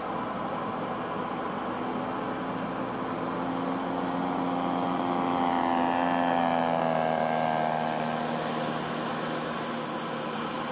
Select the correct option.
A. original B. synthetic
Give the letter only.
A